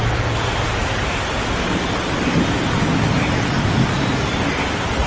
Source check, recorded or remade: recorded